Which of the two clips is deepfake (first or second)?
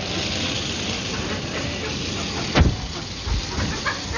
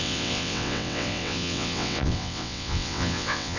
second